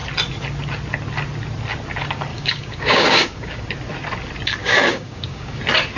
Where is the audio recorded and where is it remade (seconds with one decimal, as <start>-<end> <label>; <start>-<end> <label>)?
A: 0.0-2.3 recorded; 2.3-3.6 remade; 3.6-4.6 recorded; 4.6-5.6 remade; 5.6-6.0 recorded